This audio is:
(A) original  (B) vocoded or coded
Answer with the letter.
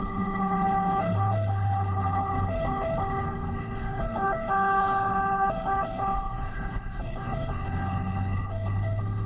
B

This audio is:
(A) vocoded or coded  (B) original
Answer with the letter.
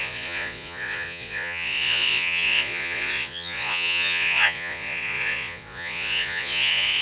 A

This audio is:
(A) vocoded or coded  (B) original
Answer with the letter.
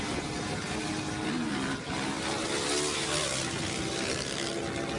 B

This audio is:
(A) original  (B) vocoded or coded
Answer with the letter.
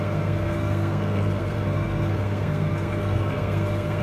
B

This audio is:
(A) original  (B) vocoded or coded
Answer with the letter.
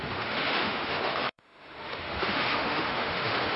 B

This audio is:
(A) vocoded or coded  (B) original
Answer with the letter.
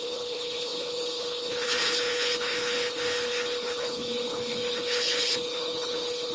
A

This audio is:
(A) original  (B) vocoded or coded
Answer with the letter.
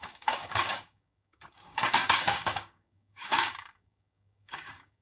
B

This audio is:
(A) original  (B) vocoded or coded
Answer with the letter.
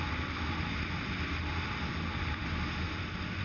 A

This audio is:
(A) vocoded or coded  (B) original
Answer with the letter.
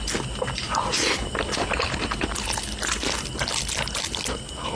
B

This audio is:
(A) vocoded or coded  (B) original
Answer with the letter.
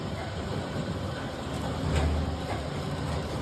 B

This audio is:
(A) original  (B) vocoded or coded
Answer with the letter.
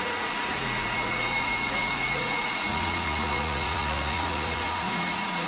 B